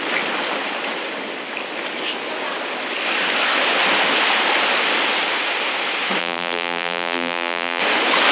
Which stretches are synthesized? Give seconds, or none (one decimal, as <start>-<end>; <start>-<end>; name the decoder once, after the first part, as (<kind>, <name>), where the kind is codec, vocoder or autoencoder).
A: 6.2-7.8 (vocoder, BigVGAN v2)